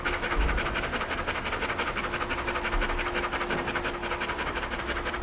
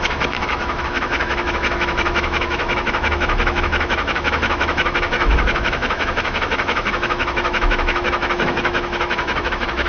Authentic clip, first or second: first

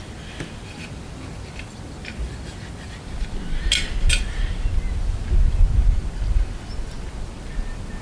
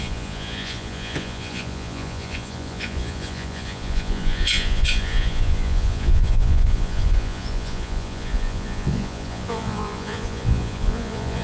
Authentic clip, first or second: first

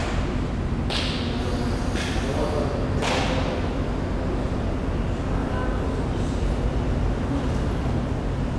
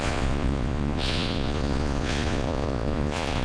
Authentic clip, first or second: first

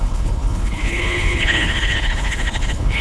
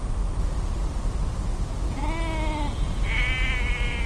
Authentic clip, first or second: second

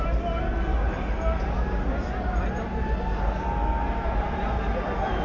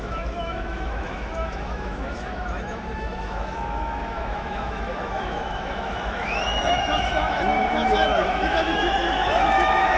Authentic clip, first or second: first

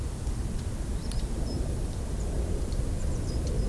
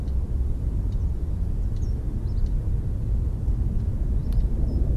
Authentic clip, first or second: second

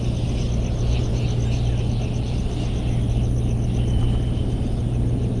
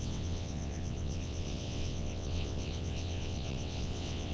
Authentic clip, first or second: first